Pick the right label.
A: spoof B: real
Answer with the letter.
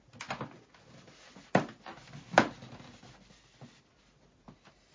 B